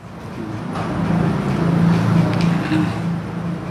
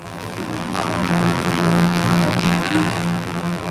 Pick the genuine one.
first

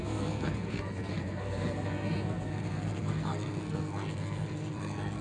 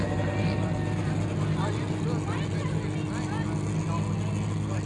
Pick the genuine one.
second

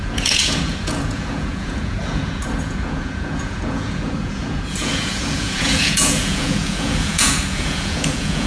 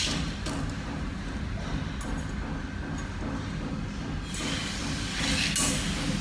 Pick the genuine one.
second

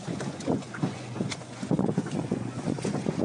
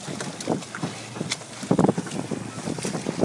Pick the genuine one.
second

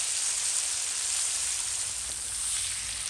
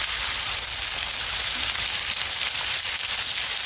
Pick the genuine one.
first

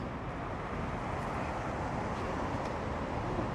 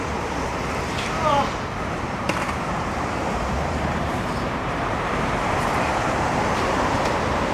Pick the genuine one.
first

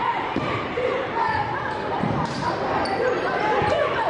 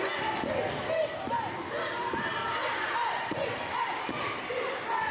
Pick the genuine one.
second